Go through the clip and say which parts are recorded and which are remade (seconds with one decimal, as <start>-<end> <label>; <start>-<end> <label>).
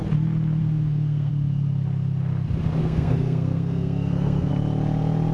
0.0-0.6 recorded; 0.6-1.3 remade; 1.3-2.8 recorded; 2.8-4.5 remade; 4.5-5.3 recorded